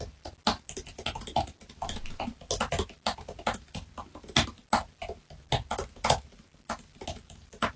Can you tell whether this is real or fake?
real